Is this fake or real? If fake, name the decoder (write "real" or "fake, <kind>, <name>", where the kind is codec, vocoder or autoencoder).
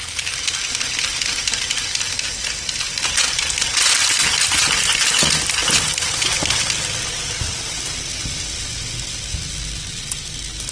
real